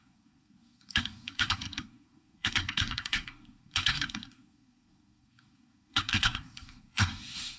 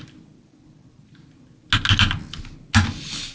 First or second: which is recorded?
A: second